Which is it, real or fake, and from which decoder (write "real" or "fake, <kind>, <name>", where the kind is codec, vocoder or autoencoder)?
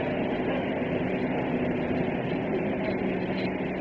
real